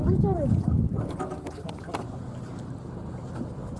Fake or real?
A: real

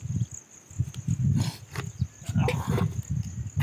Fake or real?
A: real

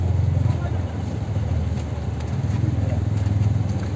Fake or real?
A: real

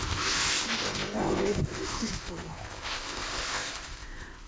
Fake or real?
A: fake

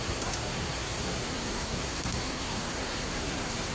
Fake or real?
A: fake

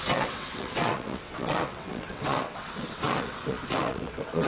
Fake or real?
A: fake